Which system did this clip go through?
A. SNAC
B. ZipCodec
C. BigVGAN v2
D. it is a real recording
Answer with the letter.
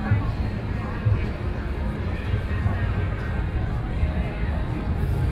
D